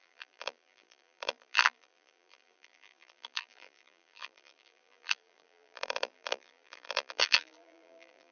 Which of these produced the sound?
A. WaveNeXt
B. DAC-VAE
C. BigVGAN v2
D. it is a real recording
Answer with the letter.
C